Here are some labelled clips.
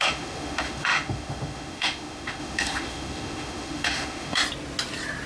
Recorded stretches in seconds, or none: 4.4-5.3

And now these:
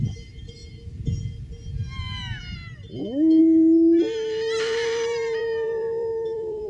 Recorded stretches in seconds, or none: 0.6-3.4

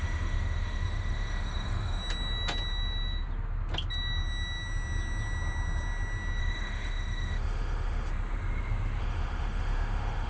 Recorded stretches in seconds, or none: 2.0-6.4; 8.1-9.0

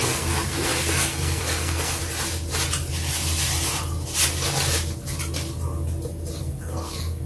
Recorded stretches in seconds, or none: 2.0-6.4

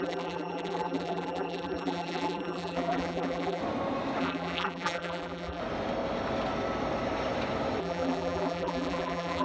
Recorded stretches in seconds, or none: 3.6-4.2; 5.6-7.8

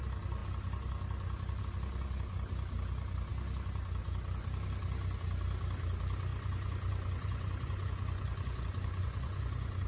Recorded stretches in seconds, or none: 0.0-6.3

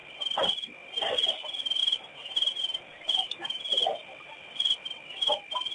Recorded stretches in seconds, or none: 0.0-1.8; 3.6-5.7

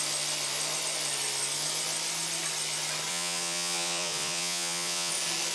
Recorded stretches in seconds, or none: 0.0-3.1; 5.1-5.5